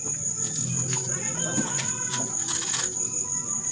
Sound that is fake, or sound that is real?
real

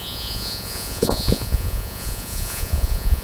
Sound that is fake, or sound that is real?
fake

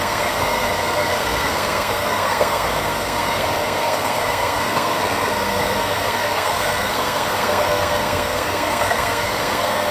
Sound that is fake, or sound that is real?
fake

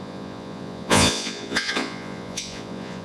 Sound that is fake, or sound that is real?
fake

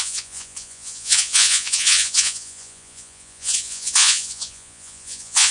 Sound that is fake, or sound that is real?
fake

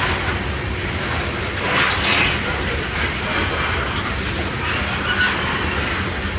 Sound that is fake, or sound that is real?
real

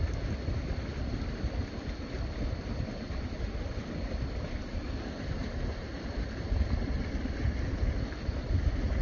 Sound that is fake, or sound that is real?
real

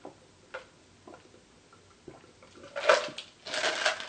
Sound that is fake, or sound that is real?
real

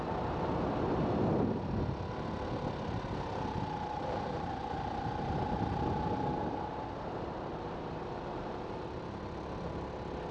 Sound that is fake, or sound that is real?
real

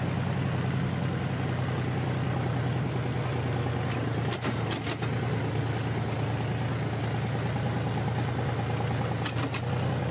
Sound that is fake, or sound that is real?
real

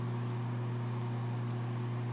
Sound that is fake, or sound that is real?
real